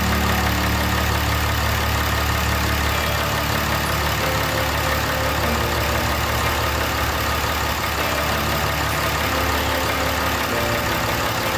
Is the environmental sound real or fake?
real